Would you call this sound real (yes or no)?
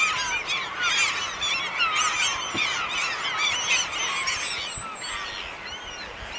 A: yes